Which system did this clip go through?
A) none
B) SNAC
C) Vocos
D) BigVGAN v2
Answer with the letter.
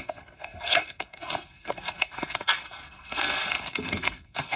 B